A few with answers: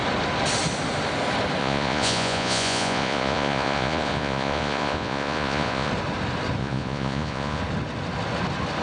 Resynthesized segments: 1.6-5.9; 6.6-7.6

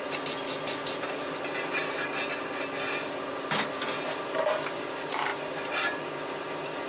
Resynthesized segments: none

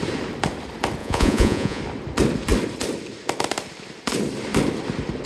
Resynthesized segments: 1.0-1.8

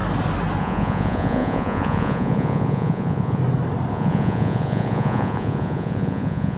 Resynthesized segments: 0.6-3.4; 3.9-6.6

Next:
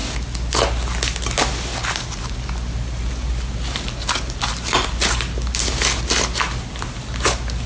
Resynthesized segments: none

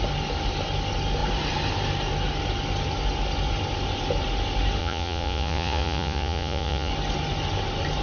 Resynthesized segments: 4.8-6.9